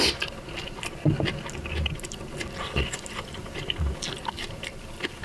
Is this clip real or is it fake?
real